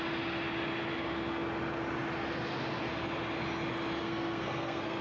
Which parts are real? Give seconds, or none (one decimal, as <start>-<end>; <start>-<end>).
0.0-4.0